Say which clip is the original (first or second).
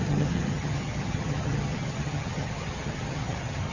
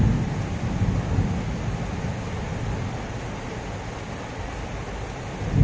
second